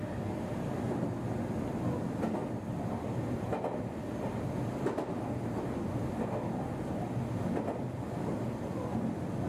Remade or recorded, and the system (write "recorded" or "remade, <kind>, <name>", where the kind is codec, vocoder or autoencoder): recorded